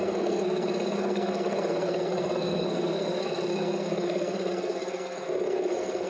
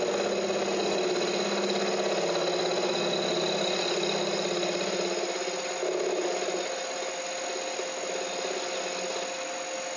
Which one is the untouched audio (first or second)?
second